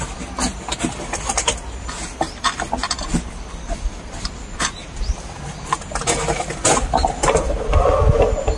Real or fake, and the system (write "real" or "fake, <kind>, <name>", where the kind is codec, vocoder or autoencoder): real